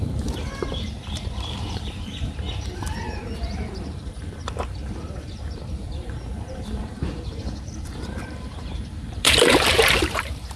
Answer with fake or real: fake